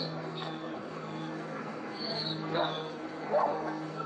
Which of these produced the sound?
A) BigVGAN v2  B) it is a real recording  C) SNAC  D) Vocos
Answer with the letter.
C